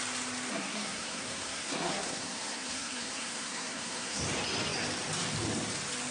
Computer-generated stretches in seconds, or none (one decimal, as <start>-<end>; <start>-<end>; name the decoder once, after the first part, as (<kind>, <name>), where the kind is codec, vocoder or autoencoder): 0.5-4.2 (codec, SNAC)